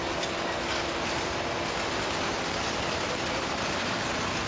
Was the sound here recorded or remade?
recorded